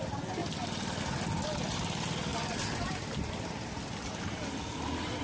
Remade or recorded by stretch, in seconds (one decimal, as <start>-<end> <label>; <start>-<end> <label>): 0.0-5.2 recorded